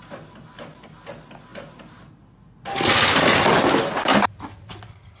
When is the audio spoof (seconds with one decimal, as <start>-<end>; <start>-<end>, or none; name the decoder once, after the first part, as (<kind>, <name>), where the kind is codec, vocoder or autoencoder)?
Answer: none